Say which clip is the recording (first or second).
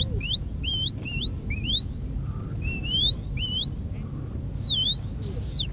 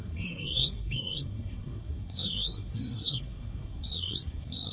first